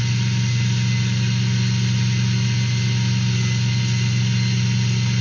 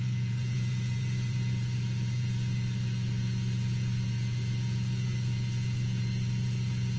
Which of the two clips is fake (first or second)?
second